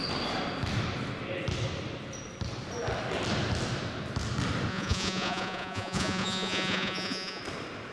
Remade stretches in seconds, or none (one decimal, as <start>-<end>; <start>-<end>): 4.7-7.4